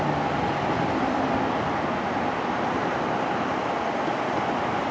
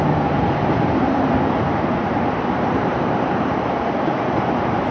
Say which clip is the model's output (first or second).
second